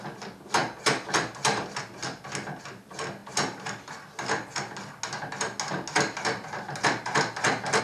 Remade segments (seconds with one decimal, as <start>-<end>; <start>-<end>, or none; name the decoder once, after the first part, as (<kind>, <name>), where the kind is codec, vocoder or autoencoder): none